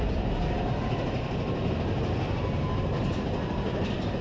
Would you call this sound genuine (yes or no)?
yes